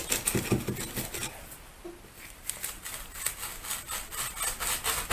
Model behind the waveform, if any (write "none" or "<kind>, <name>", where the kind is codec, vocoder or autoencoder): none